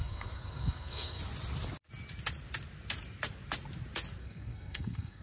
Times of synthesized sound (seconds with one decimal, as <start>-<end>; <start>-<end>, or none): 0.0-1.2; 4.2-5.2

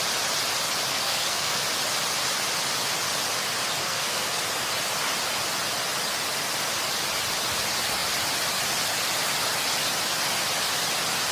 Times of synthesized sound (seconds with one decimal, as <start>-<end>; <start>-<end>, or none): 0.9-1.6; 3.8-4.4

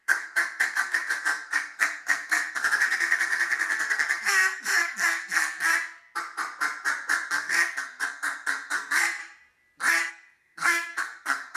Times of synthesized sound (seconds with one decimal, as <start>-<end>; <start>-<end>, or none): 0.0-5.7; 7.3-9.2; 10.1-11.6

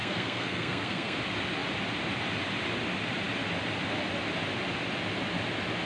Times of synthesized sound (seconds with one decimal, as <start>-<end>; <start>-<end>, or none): 0.0-1.2

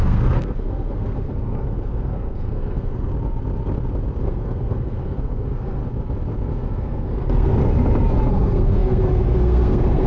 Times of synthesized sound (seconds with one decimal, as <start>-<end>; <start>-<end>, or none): 0.0-3.1; 4.2-5.8; 6.8-7.6; 8.3-10.1